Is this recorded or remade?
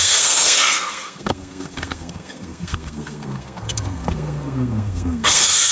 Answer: remade